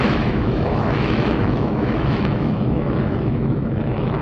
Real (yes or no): no